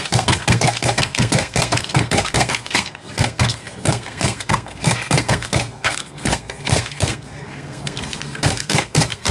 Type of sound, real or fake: fake